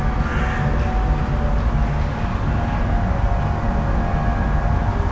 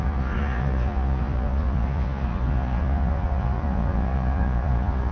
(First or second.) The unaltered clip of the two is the first